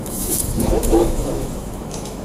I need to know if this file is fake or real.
fake